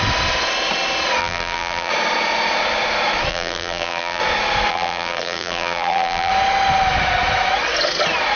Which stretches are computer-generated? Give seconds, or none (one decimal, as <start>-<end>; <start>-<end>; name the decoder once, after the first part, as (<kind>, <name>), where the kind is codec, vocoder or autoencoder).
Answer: 1.2-1.9 (vocoder, BigVGAN v2); 3.3-4.2; 4.7-6.3